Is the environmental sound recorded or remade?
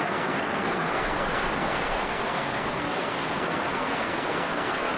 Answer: remade